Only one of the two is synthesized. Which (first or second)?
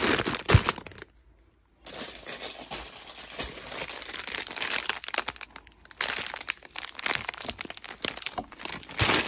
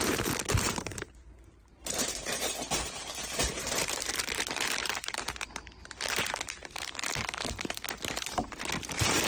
second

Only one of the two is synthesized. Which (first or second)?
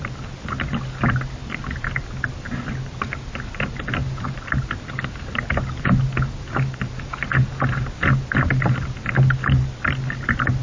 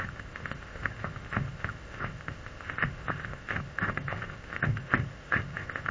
second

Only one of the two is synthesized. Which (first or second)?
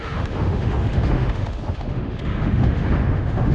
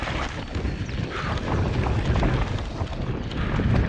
first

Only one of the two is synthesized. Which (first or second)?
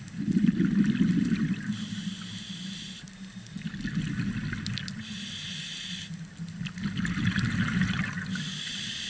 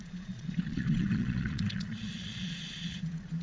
second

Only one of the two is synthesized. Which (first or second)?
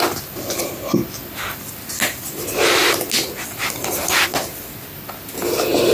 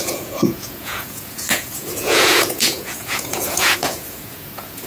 second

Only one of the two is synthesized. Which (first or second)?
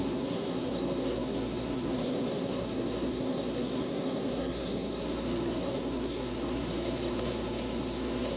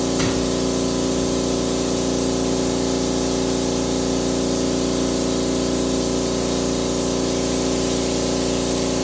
first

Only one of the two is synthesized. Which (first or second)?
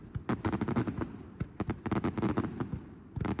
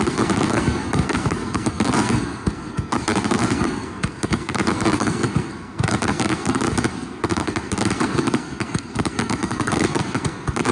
second